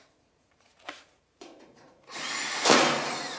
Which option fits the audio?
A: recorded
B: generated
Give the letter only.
B